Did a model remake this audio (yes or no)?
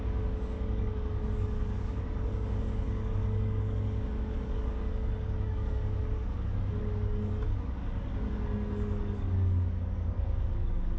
yes